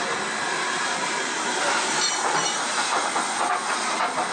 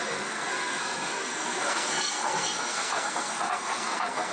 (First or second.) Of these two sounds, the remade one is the second